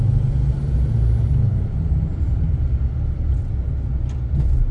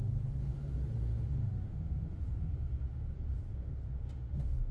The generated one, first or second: second